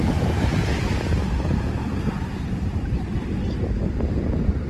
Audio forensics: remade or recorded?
recorded